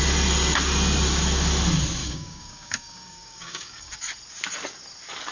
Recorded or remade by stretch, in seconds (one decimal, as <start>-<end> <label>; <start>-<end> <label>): 0.0-2.0 recorded; 2.0-3.9 remade; 3.9-5.3 recorded